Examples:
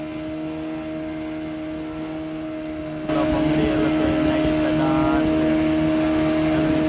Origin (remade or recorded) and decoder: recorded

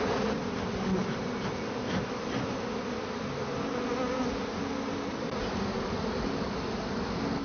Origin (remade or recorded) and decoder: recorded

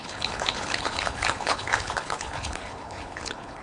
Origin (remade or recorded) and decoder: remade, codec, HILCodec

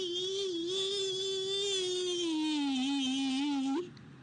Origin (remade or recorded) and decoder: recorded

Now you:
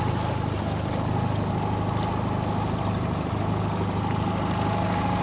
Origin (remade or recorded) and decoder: recorded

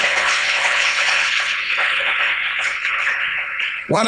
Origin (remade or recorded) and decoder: remade, codec, HILCodec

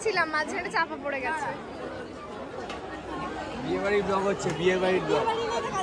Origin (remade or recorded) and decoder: recorded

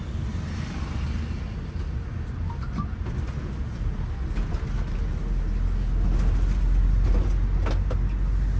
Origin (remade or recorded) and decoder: recorded